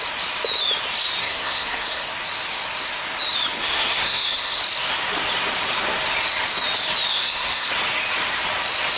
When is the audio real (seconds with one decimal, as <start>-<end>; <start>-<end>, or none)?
0.0-1.2; 2.1-3.6; 4.6-7.1; 7.7-9.0